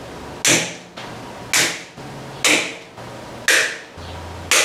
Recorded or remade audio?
recorded